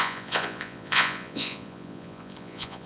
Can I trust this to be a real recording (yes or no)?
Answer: no